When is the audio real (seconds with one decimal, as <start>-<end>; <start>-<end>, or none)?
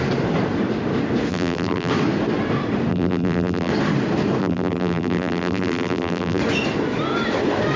0.0-1.3; 1.9-2.9; 3.7-4.4; 6.4-7.8